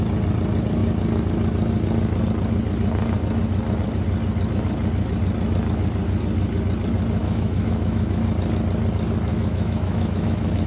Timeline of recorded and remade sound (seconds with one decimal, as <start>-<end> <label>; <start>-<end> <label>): 0.0-7.2 recorded; 7.2-8.2 remade; 8.2-9.3 recorded; 9.3-10.7 remade